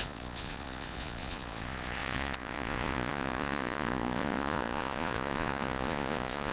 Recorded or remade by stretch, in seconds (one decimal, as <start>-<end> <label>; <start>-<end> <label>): 0.0-6.5 remade

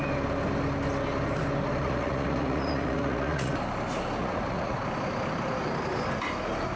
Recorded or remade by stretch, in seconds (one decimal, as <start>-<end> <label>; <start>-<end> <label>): 0.0-1.8 recorded; 1.8-3.5 remade; 3.5-4.2 recorded; 4.2-4.8 remade; 4.8-6.8 recorded

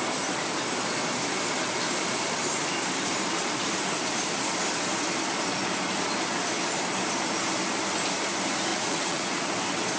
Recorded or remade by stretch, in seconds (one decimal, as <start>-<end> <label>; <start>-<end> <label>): 0.0-8.7 recorded; 8.7-9.5 remade; 9.5-10.0 recorded

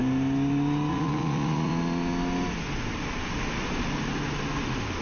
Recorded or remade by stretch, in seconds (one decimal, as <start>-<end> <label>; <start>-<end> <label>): 0.0-0.9 recorded; 0.9-1.7 remade; 1.7-5.0 recorded

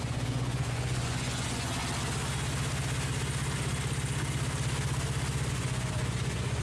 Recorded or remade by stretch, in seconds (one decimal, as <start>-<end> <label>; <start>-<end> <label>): 0.0-1.8 remade; 1.8-5.5 recorded; 5.5-6.6 remade

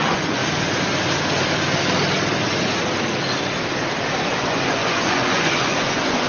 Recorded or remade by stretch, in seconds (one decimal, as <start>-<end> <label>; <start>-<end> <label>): 0.0-0.4 remade; 0.4-4.2 recorded; 4.2-6.3 remade

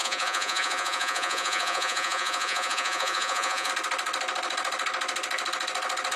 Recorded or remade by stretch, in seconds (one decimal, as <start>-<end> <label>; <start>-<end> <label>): 0.0-3.7 remade; 3.7-6.2 recorded

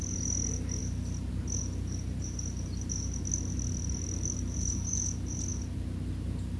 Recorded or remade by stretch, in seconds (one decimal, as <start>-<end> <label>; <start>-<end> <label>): 0.0-6.6 recorded